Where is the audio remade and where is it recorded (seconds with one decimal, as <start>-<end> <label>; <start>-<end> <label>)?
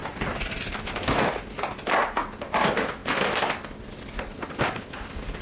0.0-0.6 remade; 0.6-5.4 recorded